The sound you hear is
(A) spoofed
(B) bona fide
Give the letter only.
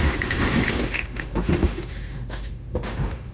A